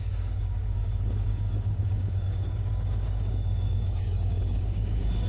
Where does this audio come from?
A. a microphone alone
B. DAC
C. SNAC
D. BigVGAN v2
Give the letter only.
B